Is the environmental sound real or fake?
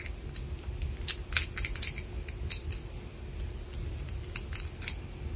real